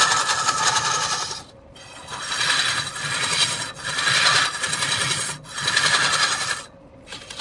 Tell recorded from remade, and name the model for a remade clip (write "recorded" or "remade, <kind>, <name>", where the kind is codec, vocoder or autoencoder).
recorded